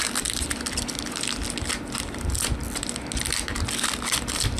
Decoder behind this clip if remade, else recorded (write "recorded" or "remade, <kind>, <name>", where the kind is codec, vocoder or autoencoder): recorded